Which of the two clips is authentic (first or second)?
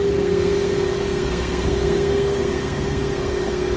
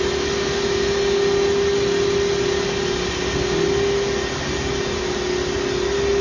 second